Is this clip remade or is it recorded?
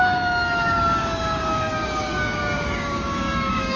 remade